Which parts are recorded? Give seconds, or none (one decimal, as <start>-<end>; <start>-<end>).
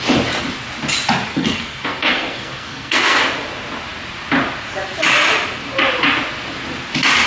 0.0-1.3; 3.2-7.3